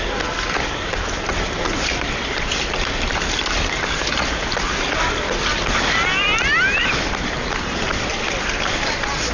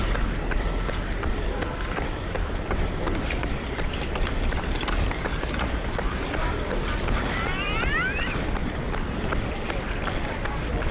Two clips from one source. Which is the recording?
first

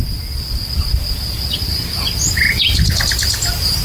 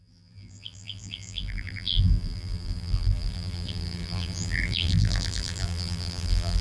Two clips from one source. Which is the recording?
first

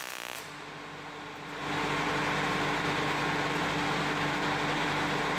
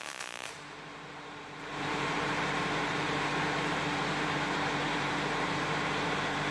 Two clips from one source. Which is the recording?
first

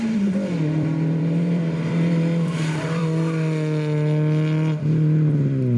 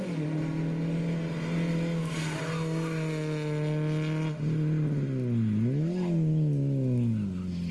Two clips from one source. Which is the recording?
second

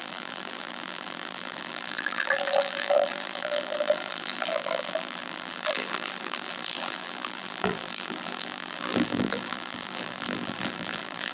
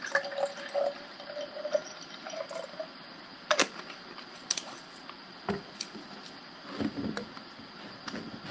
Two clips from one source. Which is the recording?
second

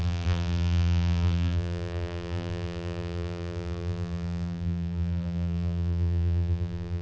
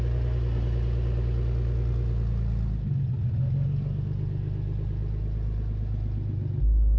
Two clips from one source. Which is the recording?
second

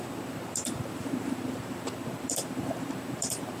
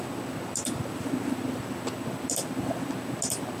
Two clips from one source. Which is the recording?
second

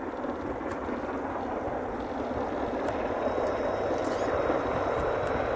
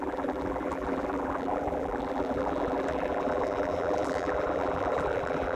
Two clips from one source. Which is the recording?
first